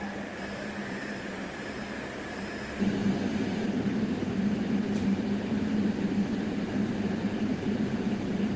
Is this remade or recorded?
remade